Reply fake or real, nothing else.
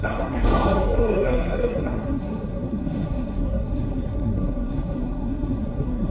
fake